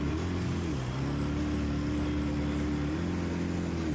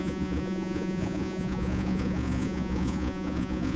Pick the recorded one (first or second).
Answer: first